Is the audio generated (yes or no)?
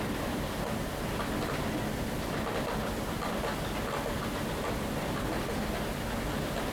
no